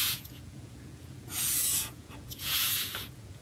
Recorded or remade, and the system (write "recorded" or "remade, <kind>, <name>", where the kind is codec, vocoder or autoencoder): remade, vocoder, Vocos